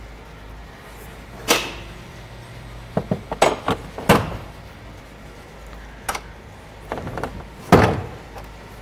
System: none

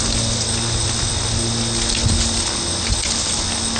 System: none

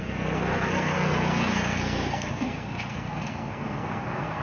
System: codec, SNAC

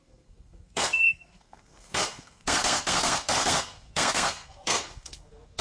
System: codec, SNAC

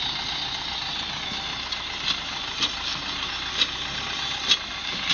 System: none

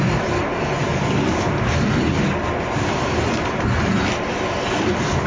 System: none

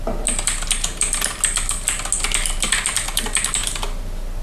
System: none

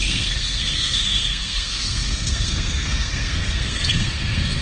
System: codec, SNAC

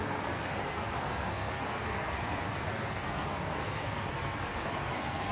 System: codec, SNAC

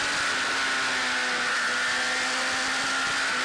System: none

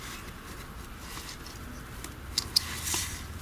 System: none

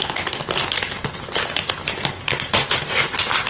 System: none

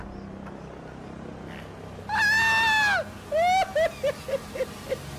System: none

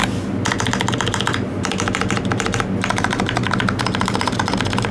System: none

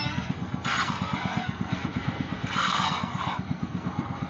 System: codec, SNAC